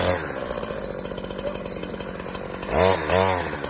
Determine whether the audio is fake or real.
real